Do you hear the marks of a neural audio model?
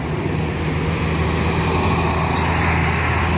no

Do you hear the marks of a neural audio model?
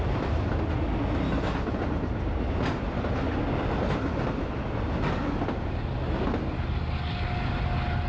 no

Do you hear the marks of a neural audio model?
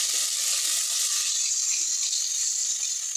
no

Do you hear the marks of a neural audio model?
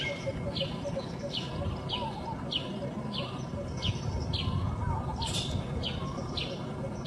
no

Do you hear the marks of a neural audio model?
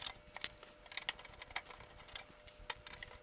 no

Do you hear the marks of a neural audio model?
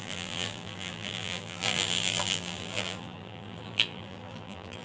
yes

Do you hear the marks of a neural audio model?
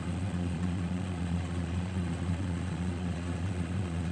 yes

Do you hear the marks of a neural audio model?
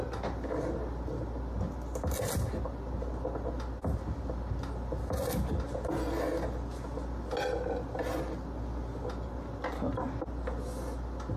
no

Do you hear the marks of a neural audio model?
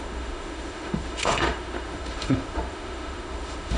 yes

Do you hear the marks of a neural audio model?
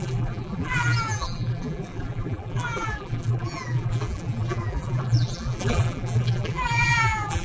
yes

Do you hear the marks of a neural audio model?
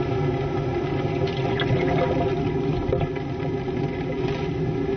no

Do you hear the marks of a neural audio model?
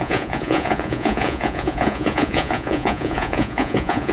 yes